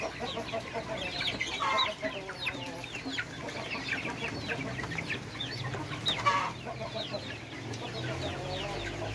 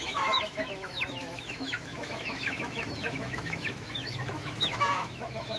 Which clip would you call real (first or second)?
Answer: first